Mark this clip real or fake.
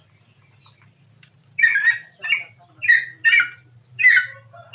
real